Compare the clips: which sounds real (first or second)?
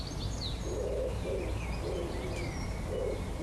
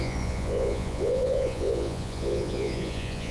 first